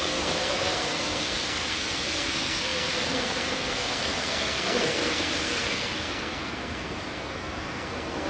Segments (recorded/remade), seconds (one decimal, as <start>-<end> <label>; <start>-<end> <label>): 0.0-8.3 remade